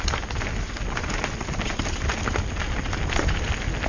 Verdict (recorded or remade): recorded